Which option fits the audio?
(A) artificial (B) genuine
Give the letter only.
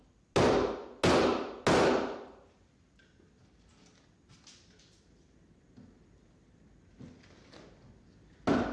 B